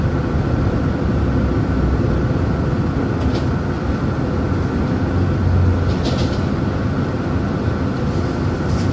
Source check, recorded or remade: recorded